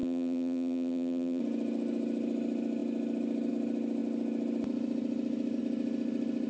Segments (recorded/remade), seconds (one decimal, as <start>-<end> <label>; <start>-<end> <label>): 0.0-1.4 remade; 1.4-6.5 recorded